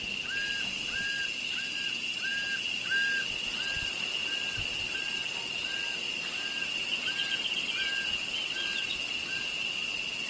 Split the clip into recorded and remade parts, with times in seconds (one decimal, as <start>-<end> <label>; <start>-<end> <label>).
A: 0.0-10.3 recorded